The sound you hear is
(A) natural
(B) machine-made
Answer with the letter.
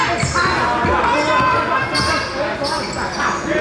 A